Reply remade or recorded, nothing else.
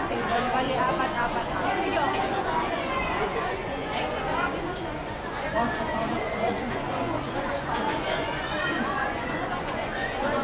remade